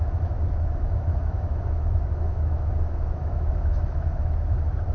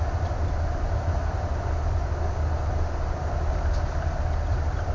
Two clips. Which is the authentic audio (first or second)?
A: second